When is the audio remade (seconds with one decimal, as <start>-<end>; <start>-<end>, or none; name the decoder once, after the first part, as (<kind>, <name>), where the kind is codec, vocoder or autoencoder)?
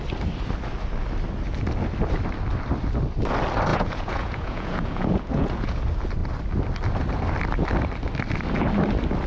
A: 3.7-5.8 (vocoder, Vocos)